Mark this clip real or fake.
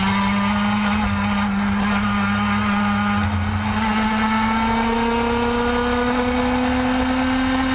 real